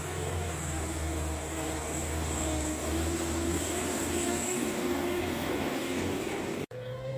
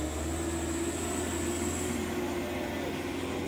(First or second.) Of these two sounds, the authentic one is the second